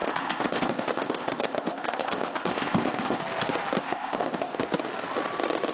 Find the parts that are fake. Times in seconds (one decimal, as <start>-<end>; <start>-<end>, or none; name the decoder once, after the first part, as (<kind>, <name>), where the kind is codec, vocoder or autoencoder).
0.0-3.2 (codec, ZipCodec); 3.8-4.5